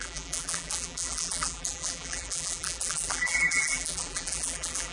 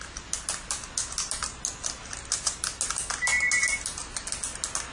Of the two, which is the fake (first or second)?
first